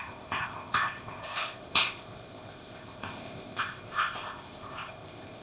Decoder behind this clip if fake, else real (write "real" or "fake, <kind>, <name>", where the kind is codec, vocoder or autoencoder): fake, codec, ZipCodec